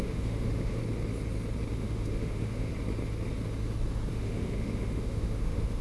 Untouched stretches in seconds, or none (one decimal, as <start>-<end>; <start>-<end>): 0.8-1.7; 2.7-4.1